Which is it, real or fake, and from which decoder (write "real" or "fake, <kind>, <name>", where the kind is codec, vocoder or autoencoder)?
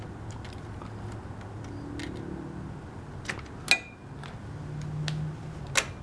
real